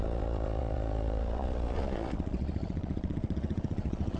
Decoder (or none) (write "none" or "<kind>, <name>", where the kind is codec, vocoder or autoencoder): vocoder, Vocos